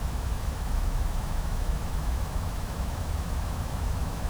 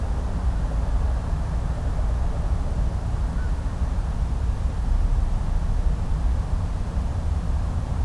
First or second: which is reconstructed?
first